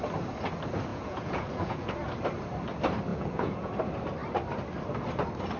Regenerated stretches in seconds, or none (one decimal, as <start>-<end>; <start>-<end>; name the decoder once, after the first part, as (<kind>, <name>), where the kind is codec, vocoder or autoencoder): 0.9-1.9 (vocoder, Vocos); 3.1-3.7